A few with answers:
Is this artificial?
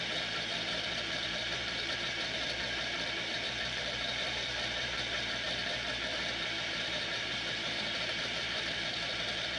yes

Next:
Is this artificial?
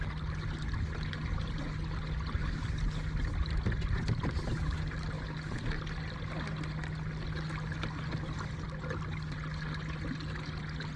no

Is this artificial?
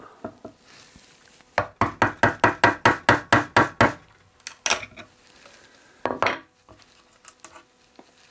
no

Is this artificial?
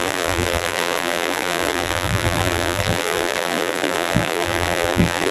yes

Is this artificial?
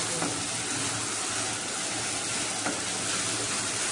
no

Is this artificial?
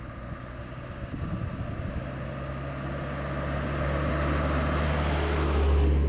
no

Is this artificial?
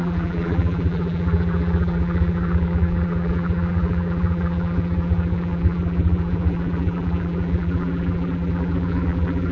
yes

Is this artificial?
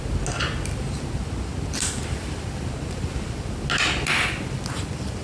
no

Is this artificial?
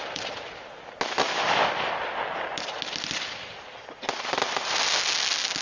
no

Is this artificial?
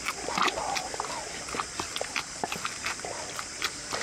no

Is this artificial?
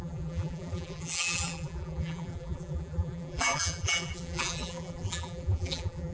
yes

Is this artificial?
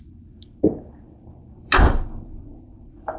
yes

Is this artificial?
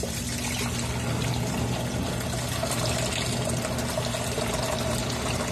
no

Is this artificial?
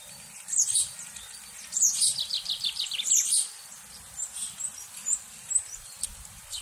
yes